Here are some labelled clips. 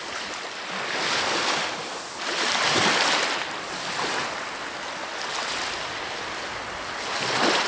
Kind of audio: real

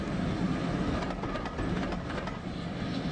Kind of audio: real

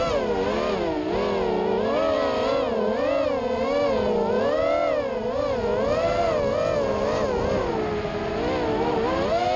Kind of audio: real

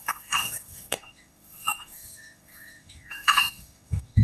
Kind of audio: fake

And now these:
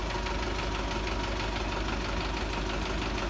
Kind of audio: real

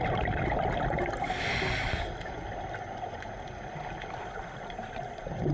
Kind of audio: real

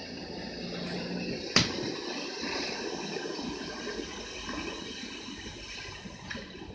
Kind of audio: real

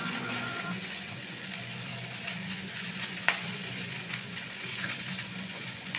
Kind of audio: fake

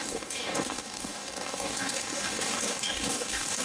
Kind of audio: fake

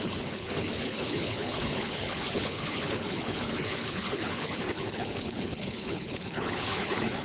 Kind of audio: fake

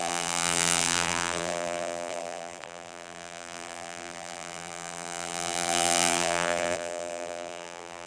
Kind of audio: fake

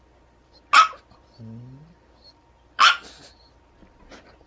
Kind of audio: real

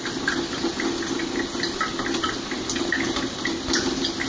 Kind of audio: real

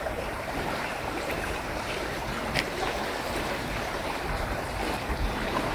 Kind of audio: fake